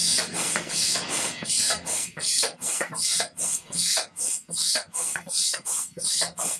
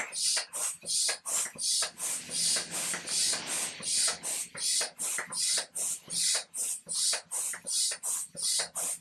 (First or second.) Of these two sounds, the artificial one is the first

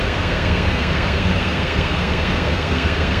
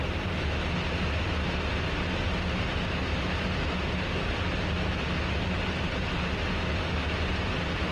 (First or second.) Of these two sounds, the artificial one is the first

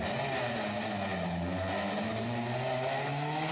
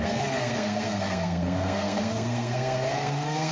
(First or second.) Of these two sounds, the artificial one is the second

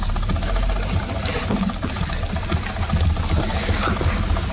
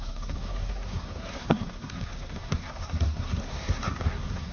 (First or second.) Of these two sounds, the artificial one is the second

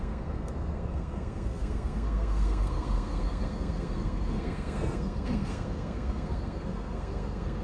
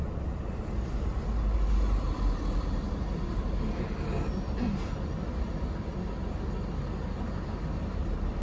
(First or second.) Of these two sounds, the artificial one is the first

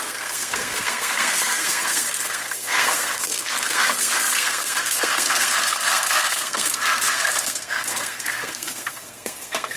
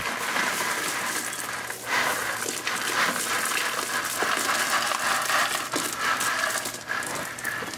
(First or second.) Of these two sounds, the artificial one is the first